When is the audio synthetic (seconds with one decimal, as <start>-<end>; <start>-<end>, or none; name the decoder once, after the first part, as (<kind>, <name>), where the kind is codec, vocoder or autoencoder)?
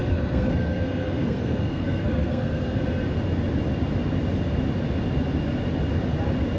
0.0-2.8 (codec, SNAC)